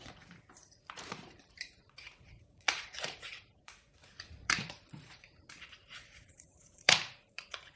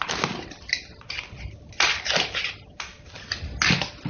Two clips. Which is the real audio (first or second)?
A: second